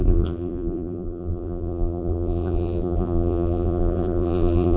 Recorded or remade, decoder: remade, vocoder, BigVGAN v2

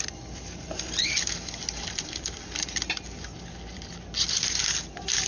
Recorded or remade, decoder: remade, vocoder, BigVGAN v2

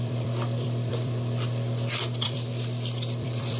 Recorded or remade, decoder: remade, vocoder, BigVGAN v2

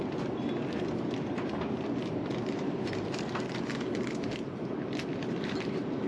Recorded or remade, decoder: remade, vocoder, BigVGAN v2